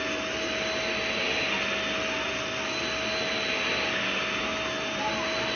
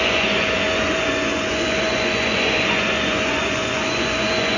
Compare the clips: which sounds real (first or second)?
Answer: first